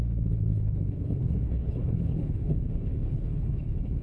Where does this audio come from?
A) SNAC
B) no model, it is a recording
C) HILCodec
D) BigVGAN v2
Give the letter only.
C